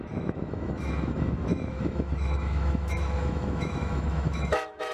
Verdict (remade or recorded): remade